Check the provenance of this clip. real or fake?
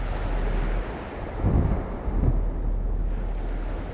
real